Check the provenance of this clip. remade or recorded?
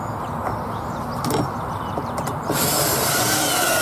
recorded